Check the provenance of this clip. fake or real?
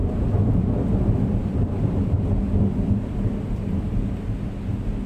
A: real